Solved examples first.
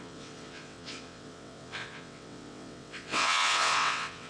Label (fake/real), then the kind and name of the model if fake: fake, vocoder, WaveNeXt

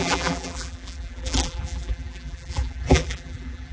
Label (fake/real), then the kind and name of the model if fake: fake, vocoder, BigVGAN v2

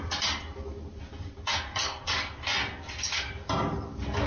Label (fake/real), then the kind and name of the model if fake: real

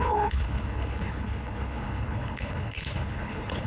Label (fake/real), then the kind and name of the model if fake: fake, codec, HILCodec